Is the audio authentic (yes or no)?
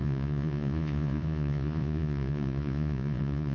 no